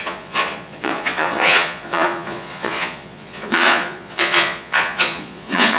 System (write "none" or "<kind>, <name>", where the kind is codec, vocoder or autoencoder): vocoder, Vocos